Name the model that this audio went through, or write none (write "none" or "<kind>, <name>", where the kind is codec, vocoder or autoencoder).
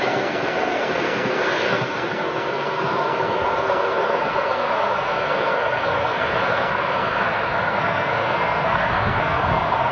codec, SNAC